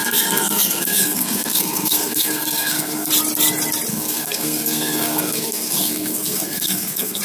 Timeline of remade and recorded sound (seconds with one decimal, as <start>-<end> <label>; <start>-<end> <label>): 0.0-3.1 remade; 3.1-3.9 recorded; 3.9-7.2 remade